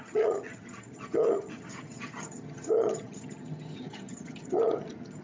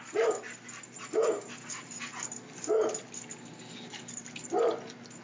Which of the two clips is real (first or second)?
second